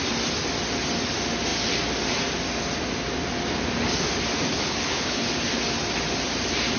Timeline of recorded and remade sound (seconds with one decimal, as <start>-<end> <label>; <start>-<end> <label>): 0.0-4.5 recorded; 4.5-5.2 remade; 5.2-6.8 recorded